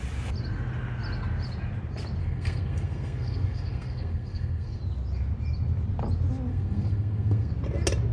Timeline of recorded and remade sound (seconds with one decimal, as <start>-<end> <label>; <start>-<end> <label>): 0.0-2.2 recorded; 2.2-4.8 remade; 4.8-6.5 recorded; 6.5-7.5 remade; 7.5-8.1 recorded